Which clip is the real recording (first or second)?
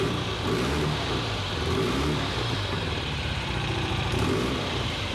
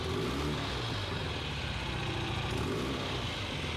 second